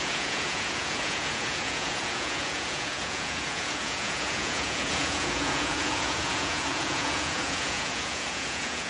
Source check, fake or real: fake